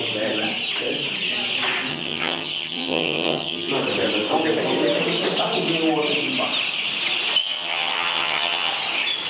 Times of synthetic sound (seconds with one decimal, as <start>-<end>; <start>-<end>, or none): 1.9-3.7; 7.4-8.7

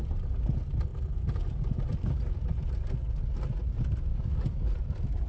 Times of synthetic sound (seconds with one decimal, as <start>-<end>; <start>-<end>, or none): 4.1-4.7

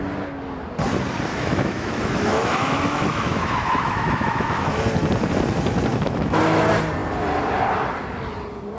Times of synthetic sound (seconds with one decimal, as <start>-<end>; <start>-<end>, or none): 1.3-4.8; 5.9-6.4

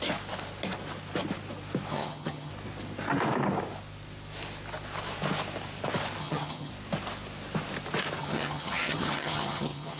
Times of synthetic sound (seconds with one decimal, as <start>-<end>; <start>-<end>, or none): 1.9-2.5; 6.2-6.7; 8.2-10.0

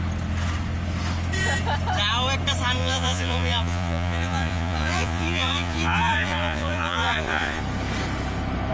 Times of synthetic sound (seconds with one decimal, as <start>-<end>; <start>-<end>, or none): 2.8-7.6

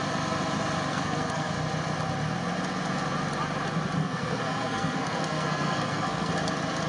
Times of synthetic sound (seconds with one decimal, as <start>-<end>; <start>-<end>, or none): 0.9-1.5; 4.0-6.3

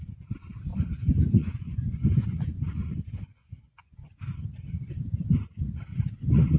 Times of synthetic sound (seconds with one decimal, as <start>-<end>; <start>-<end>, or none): 0.7-4.2; 5.9-6.6